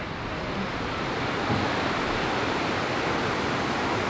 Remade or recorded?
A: recorded